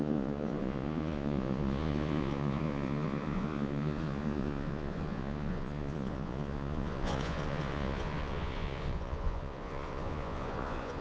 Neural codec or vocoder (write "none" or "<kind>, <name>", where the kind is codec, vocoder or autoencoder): vocoder, Vocos